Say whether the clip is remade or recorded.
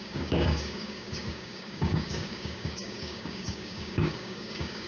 remade